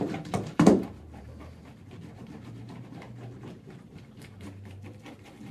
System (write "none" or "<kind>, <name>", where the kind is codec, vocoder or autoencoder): vocoder, BigVGAN v2